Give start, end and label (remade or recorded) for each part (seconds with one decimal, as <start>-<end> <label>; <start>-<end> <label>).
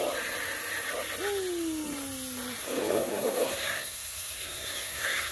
0.0-2.6 recorded; 2.6-5.3 remade